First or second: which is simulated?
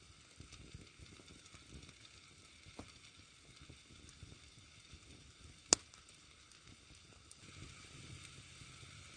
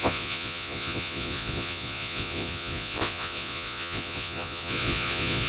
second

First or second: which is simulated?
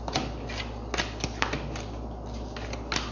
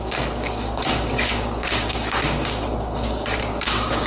second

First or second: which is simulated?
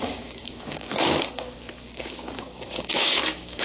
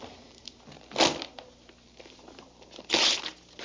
first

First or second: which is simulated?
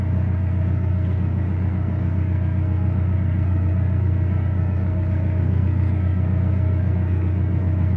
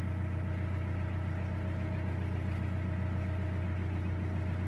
first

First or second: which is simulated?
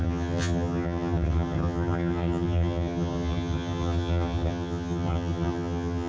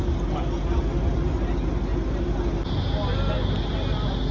first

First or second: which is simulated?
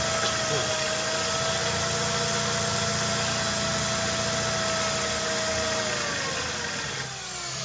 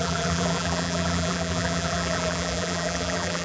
second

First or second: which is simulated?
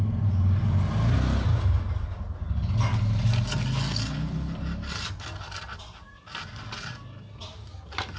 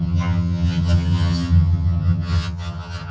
second